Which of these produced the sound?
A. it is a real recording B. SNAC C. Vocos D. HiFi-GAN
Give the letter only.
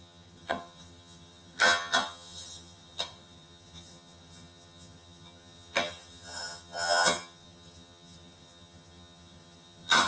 D